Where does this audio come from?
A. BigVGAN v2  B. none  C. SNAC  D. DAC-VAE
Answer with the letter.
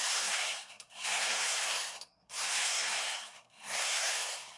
C